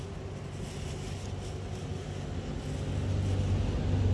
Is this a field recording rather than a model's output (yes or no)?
yes